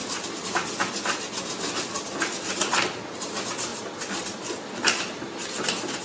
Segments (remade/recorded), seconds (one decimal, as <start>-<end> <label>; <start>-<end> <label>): 0.0-6.0 recorded